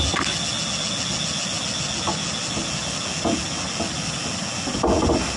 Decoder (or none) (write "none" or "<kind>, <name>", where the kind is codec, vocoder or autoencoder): none